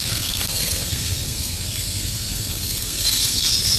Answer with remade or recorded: remade